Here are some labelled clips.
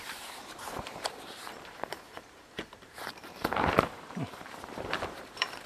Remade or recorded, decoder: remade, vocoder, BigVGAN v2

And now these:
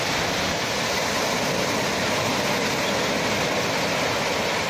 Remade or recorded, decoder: recorded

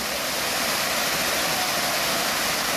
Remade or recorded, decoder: recorded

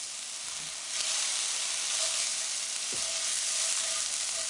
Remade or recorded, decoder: recorded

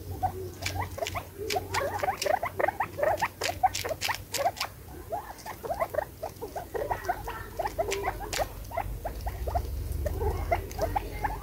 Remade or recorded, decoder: recorded